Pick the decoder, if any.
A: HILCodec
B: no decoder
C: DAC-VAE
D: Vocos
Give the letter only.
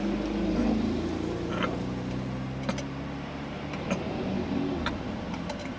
B